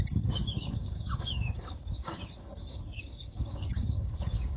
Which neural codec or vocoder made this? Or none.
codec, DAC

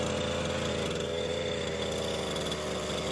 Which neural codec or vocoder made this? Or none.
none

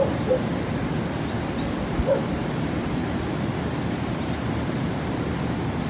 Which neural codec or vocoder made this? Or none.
none